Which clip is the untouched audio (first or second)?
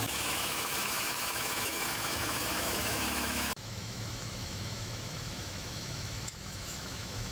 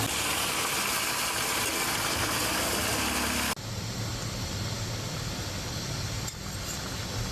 second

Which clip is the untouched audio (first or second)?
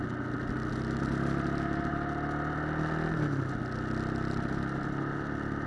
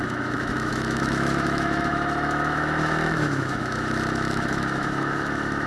first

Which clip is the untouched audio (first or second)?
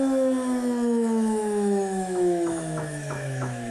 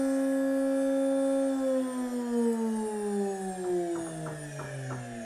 second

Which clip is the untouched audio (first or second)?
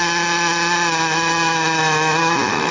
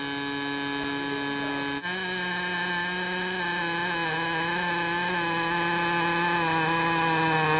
second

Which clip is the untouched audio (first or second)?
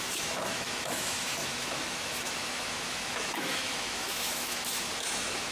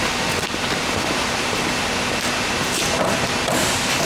second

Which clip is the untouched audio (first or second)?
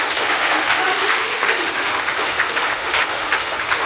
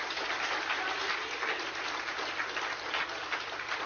second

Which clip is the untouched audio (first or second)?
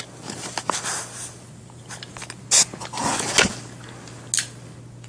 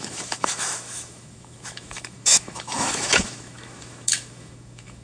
first